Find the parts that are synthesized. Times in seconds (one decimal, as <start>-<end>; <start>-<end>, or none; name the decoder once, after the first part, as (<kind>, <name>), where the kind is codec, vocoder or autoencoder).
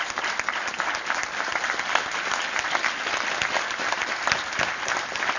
none